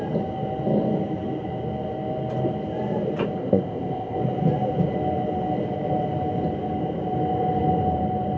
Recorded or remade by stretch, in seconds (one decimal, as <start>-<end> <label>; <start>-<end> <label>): 0.0-3.4 recorded; 3.4-4.2 remade; 4.2-8.4 recorded